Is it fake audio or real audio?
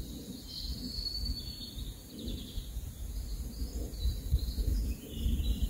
real